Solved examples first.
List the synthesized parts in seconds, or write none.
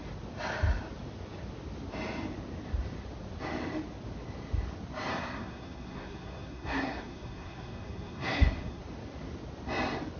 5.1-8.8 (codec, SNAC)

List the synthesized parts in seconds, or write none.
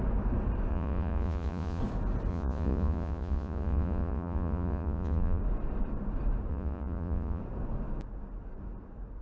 0.7-1.8 (vocoder, Vocos); 2.3-5.4; 6.5-7.4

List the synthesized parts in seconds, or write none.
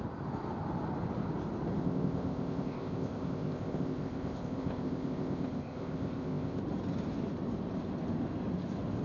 1.8-6.6 (codec, ZipCodec)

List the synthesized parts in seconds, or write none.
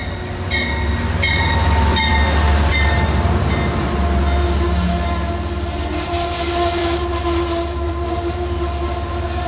none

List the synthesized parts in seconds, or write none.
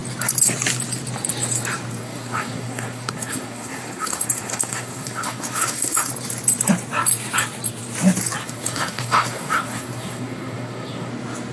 2.0-6.1 (codec, SNAC); 8.4-11.1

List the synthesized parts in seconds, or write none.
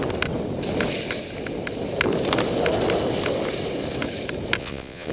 4.6-5.1 (vocoder, Vocos)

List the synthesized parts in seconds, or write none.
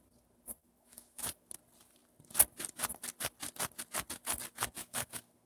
0.6-1.5 (autoencoder, DAC-VAE); 4.8-5.5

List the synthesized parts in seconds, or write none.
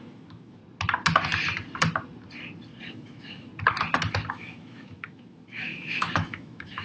0.0-0.6 (autoencoder, DAC-VAE); 2.9-3.5; 4.3-6.8